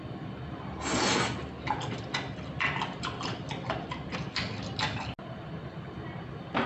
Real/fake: real